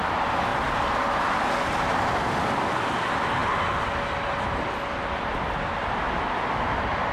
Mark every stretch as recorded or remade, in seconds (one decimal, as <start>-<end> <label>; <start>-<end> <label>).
0.0-0.5 recorded; 0.5-1.4 remade; 1.4-7.1 recorded